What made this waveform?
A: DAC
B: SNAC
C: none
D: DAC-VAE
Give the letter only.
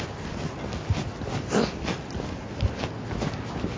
C